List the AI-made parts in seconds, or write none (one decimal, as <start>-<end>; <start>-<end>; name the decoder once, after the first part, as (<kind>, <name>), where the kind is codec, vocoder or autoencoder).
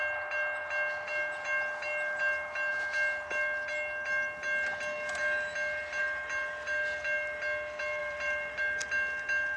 8.0-8.6 (vocoder, BigVGAN v2)